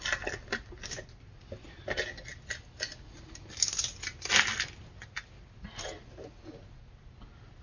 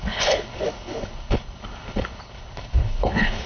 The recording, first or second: first